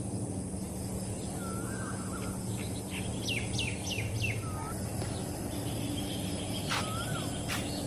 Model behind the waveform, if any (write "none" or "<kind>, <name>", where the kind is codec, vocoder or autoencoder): none